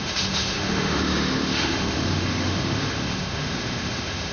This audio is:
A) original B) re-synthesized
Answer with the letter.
B